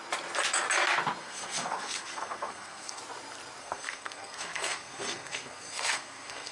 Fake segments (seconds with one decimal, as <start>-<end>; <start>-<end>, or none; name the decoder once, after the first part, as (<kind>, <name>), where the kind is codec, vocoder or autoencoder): 1.2-3.0 (codec, SNAC); 3.6-6.5